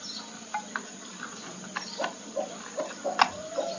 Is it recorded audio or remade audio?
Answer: recorded